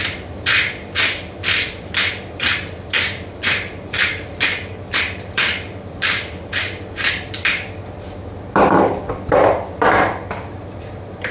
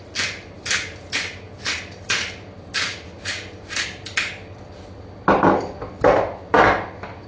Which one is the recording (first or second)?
second